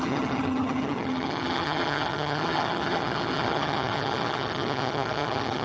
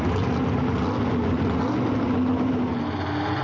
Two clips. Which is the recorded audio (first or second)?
second